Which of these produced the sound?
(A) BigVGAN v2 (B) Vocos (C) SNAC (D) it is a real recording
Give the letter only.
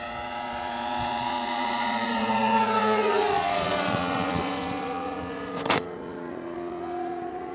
B